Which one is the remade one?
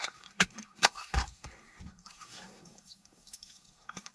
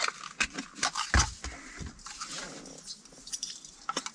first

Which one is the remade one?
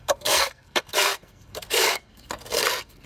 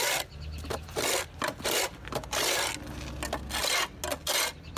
first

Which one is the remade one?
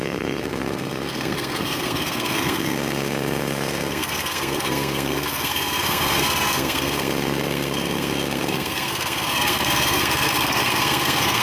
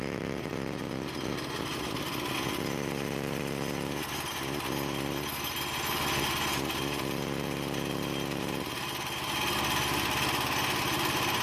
first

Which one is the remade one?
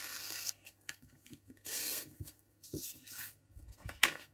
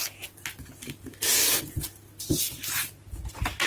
first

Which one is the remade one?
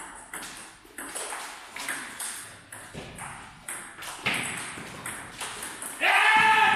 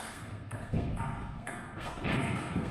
second